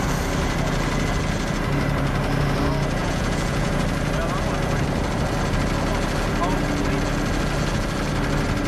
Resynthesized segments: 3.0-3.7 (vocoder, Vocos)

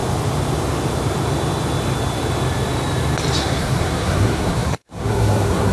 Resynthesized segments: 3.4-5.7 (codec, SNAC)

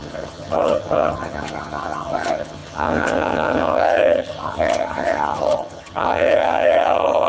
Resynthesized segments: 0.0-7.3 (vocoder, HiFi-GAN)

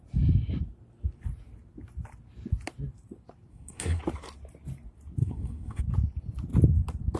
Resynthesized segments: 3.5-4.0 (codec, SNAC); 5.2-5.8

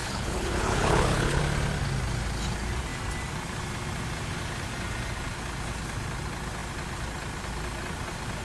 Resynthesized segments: 0.0-1.4 (codec, HILCodec)